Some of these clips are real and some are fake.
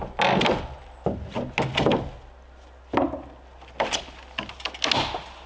real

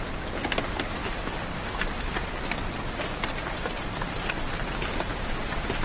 real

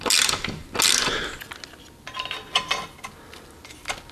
real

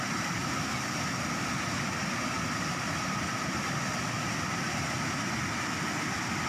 real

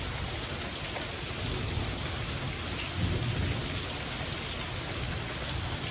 real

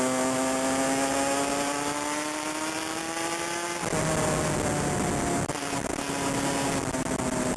real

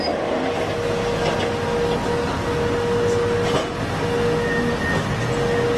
real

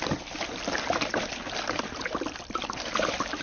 real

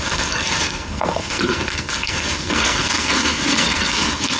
fake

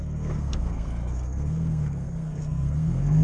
fake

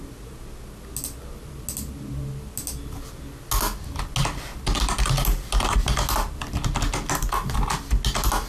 real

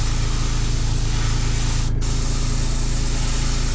real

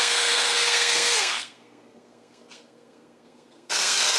fake